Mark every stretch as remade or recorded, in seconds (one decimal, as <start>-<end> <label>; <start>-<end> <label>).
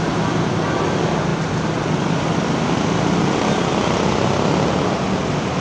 0.0-1.3 recorded; 1.3-4.7 remade; 4.7-5.6 recorded